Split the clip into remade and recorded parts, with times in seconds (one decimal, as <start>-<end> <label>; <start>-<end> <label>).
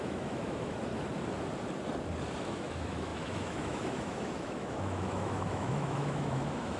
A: 0.0-0.9 remade; 0.9-2.4 recorded; 2.4-6.8 remade